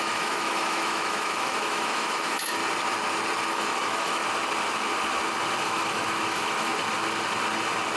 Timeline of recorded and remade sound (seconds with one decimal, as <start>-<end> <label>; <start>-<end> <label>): 0.0-2.6 remade; 2.6-3.5 recorded; 3.5-4.2 remade; 4.2-5.6 recorded; 5.6-6.7 remade; 6.7-8.0 recorded